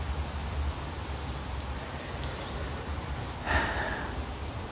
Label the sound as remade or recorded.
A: recorded